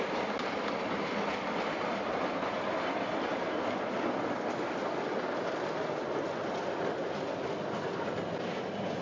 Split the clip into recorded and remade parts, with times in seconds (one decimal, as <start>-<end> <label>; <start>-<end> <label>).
0.0-9.0 recorded